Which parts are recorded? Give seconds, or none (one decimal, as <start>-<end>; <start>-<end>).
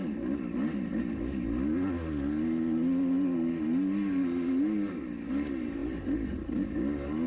0.0-7.3